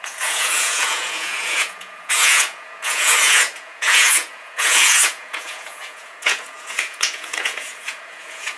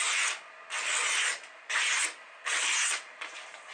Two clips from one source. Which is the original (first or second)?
second